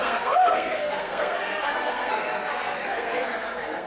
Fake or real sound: fake